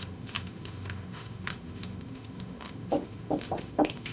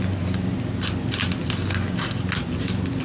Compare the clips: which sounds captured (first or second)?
second